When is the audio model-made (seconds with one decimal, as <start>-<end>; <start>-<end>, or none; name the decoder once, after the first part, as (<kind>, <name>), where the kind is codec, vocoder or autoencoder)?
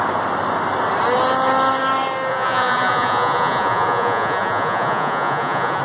2.3-5.8 (vocoder, Vocos)